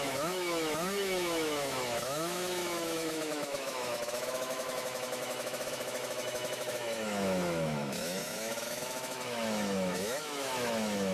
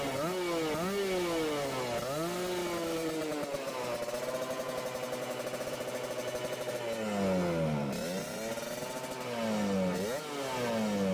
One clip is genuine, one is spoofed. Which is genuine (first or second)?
second